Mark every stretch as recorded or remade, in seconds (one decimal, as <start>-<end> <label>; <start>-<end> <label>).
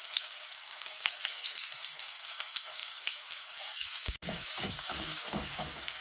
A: 0.0-6.0 remade